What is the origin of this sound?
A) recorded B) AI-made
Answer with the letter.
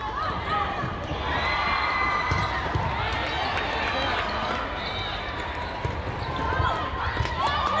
A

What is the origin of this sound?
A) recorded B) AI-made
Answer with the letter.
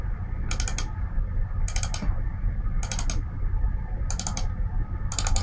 A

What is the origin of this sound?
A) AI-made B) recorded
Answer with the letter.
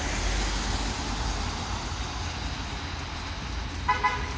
B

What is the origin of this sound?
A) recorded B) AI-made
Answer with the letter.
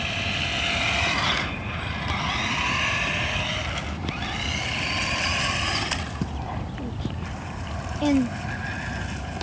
A